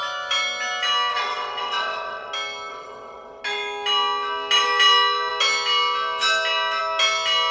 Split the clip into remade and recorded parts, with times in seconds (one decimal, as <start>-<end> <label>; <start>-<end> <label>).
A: 0.0-1.1 recorded; 1.1-2.3 remade; 2.3-2.7 recorded; 2.7-3.4 remade; 3.4-7.5 recorded